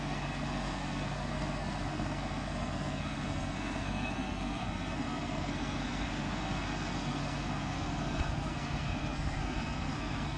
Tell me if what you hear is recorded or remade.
remade